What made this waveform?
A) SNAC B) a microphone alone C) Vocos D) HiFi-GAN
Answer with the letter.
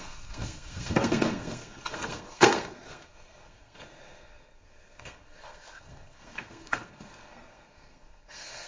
A